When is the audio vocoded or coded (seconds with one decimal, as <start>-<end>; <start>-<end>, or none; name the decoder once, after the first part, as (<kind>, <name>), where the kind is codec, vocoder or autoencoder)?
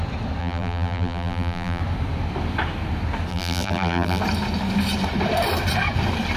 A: 0.4-1.8 (vocoder, BigVGAN v2); 3.3-4.2